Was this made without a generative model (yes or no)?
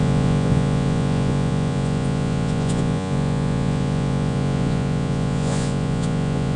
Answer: no